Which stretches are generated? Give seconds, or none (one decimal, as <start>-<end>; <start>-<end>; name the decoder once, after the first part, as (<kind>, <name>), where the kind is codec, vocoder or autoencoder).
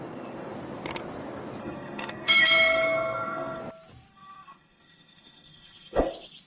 1.6-3.6 (codec, SNAC); 4.1-6.1